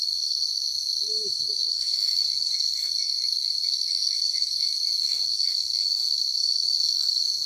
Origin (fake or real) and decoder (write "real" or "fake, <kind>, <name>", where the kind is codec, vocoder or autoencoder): fake, codec, SNAC